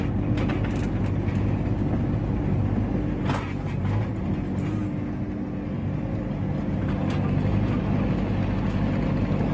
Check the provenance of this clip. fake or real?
real